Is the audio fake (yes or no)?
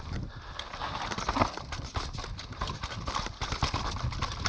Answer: no